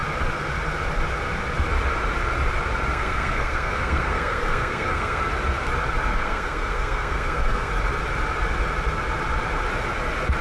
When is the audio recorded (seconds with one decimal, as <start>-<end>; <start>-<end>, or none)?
0.0-2.9; 5.2-6.1; 7.7-10.4